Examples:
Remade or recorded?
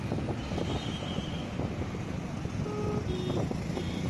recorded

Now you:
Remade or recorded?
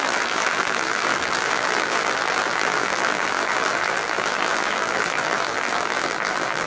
remade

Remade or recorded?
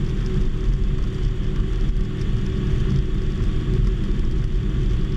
recorded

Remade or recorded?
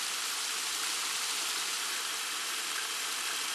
recorded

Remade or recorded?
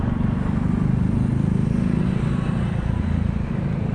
recorded